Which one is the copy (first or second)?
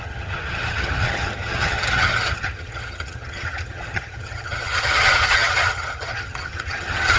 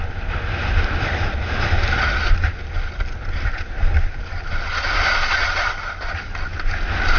first